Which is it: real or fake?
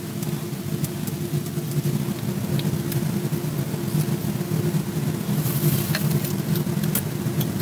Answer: real